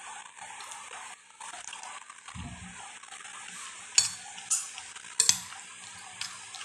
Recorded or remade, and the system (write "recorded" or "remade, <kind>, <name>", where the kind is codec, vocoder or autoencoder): recorded